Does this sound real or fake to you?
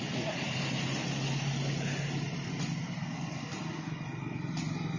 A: real